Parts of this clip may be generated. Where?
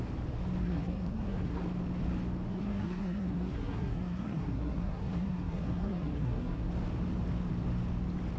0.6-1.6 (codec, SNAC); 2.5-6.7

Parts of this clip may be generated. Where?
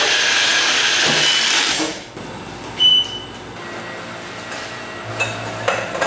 none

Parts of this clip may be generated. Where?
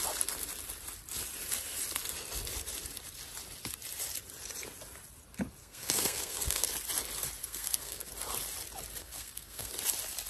5.6-6.7 (codec, SNAC); 7.4-8.1; 9.0-9.7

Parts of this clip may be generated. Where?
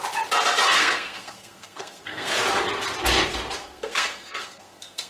0.7-2.3 (codec, SNAC); 3.6-5.1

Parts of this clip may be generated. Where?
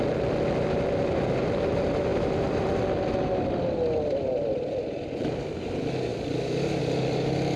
none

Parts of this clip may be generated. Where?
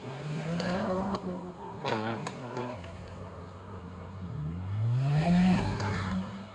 0.0-6.5 (codec, SNAC)